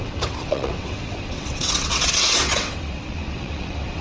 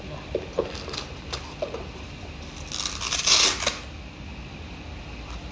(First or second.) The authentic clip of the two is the second